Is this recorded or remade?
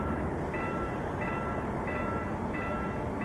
recorded